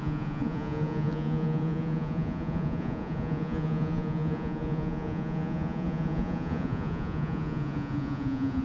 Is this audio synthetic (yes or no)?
yes